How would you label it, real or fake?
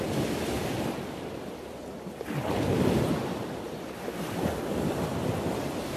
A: real